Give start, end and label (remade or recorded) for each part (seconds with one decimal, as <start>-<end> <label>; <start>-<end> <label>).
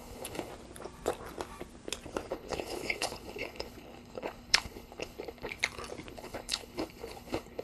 0.0-0.5 remade; 0.5-2.3 recorded; 2.3-5.6 remade; 5.6-6.1 recorded; 6.1-7.6 remade